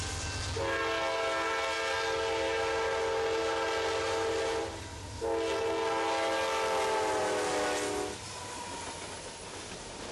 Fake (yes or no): no